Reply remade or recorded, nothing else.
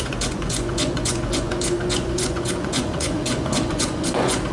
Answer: remade